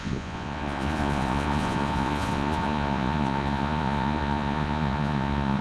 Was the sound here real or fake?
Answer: fake